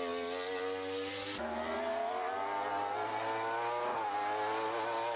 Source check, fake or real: real